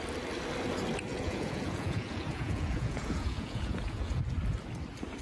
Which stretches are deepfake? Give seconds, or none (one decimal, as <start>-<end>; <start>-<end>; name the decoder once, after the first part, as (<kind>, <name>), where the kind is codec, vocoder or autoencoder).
1.1-4.2 (vocoder, Vocos)